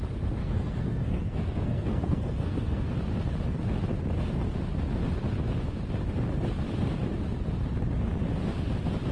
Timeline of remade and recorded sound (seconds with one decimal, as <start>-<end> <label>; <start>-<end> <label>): 0.0-0.4 recorded; 0.4-2.9 remade; 2.9-9.1 recorded